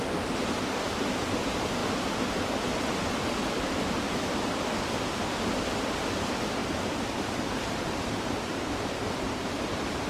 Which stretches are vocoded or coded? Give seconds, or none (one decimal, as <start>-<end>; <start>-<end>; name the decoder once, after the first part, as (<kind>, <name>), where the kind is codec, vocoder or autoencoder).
6.6-10.1 (vocoder, BigVGAN v2)